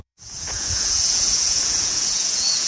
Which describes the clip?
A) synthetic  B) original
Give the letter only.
A